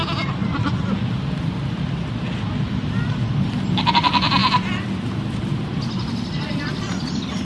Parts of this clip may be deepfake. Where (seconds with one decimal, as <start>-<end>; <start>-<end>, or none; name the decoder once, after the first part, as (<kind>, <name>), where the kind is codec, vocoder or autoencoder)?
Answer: none